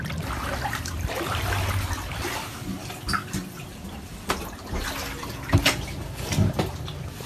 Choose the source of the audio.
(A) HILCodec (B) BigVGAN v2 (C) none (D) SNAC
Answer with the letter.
B